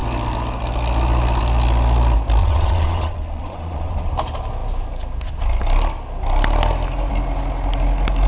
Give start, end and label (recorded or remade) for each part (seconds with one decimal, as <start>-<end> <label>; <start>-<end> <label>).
0.0-2.4 recorded; 2.4-4.1 remade; 4.1-8.3 recorded